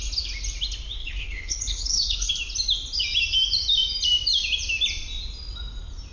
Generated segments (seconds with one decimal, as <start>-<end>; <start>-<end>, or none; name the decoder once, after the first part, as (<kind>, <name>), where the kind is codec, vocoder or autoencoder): 1.0-2.3 (codec, HILCodec)